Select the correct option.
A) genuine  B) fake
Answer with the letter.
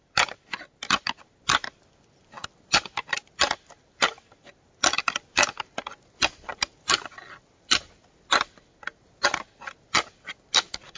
A